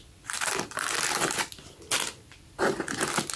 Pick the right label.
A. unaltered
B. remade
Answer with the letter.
A